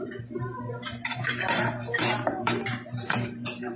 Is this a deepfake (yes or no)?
yes